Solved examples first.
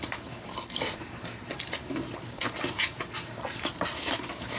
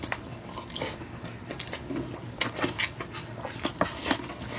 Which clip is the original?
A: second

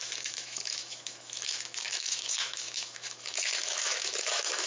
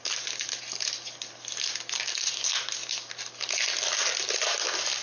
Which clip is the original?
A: second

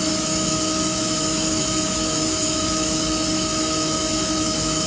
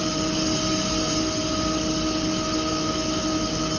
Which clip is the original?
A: second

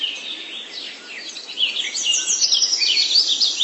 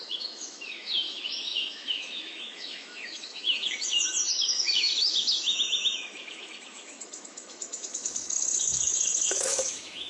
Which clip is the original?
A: first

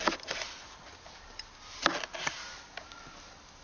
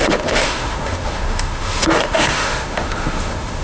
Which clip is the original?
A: first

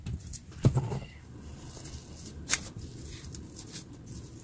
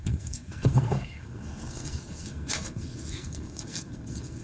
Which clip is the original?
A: first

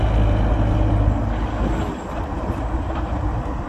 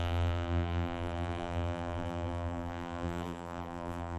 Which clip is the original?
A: first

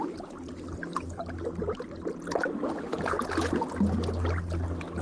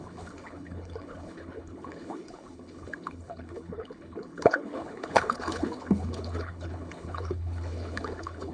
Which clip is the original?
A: first